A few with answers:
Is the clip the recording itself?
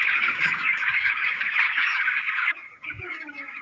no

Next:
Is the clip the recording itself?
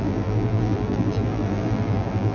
no